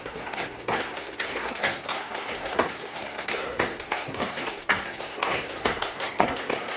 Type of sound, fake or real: fake